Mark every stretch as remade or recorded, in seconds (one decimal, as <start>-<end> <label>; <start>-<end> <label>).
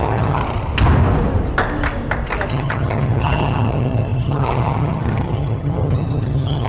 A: 0.0-0.4 remade; 0.4-2.5 recorded; 2.5-6.7 remade